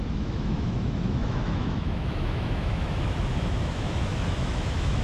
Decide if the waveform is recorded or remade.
remade